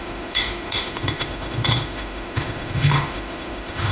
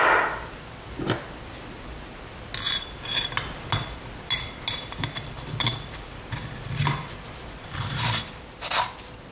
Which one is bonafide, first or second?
second